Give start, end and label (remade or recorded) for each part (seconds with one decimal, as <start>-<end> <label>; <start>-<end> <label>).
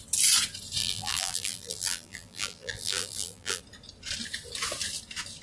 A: 0.0-0.8 recorded; 0.8-3.6 remade; 3.6-5.4 recorded